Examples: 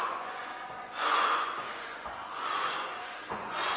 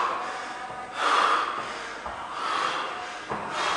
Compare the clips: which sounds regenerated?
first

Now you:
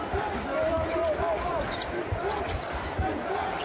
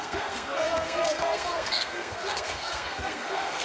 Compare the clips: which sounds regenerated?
second